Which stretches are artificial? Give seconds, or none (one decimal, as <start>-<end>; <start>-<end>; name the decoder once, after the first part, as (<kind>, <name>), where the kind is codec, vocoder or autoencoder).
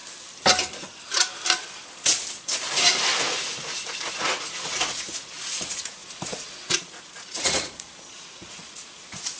4.1-9.4 (vocoder, Vocos)